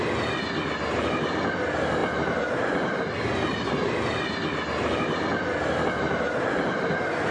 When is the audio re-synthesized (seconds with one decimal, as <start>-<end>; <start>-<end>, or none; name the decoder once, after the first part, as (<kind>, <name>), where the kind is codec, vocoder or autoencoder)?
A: none